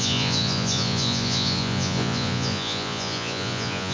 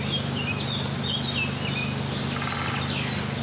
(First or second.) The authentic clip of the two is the second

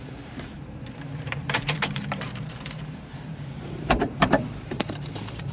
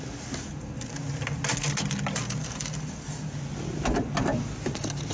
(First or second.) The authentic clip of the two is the second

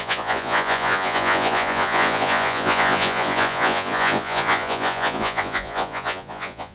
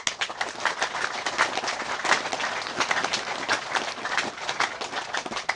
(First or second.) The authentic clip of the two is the second